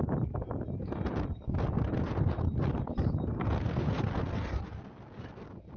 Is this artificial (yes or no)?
no